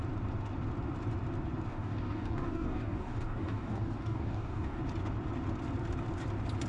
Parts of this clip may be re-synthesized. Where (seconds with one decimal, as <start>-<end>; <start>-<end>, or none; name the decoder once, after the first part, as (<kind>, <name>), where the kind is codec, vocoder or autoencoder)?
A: 1.7-4.8 (codec, DAC)